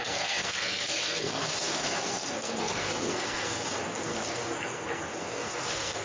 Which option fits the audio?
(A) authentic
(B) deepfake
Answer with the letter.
B